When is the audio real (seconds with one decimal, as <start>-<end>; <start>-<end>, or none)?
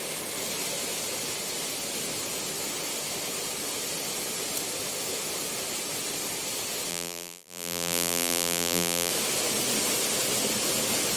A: 0.0-6.9; 9.1-11.2